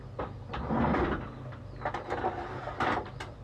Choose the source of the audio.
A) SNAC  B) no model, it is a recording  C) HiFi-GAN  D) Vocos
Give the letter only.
B